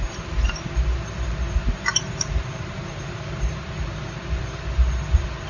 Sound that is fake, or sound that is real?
fake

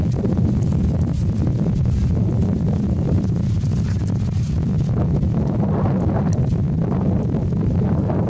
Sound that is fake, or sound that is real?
fake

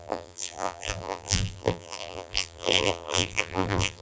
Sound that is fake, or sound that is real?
fake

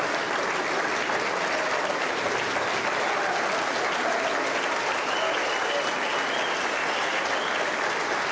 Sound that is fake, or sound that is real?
real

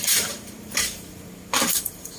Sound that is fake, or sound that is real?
fake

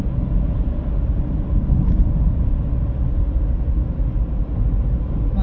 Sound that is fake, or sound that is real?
real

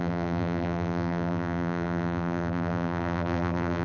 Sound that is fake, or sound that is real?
fake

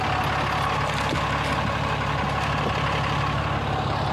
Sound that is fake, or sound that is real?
real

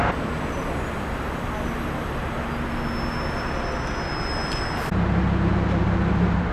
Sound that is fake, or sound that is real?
real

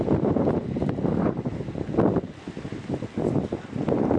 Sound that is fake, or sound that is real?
real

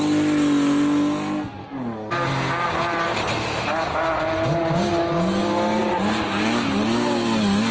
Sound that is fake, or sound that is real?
real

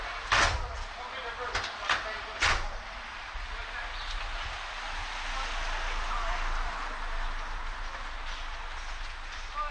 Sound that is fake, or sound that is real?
real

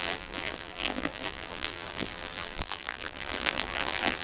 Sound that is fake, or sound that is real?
fake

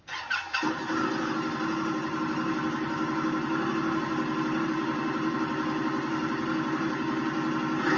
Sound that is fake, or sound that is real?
real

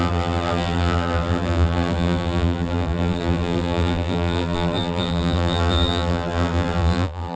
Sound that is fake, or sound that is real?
fake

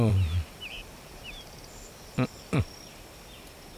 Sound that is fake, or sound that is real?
fake